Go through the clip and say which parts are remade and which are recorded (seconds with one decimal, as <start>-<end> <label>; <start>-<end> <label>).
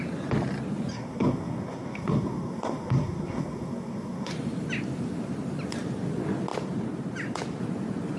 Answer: 0.0-0.9 recorded; 0.9-4.3 remade; 4.3-8.2 recorded